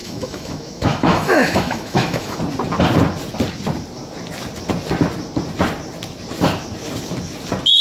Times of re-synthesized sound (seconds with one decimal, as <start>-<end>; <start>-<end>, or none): 0.0-2.4